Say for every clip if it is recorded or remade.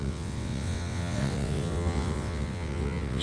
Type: remade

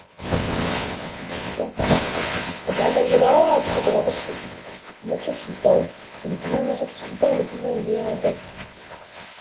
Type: remade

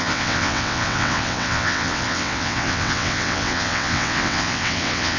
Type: remade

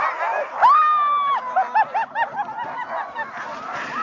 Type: recorded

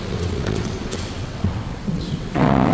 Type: remade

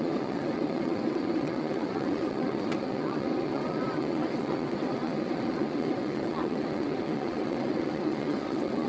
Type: remade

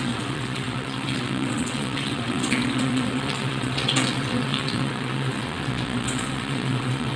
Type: remade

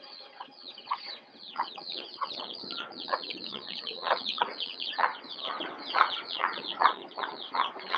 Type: remade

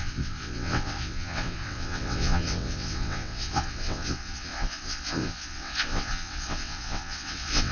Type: remade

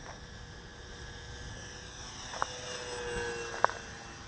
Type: recorded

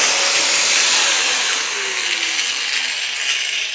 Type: recorded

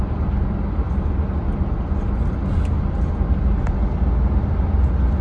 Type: recorded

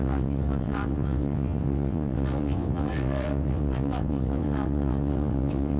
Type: remade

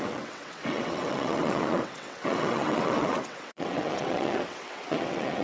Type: remade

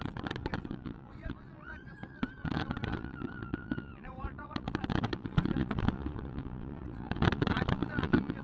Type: remade